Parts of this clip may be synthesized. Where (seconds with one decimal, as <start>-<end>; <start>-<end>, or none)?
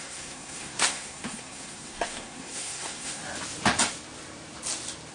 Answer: 0.0-3.2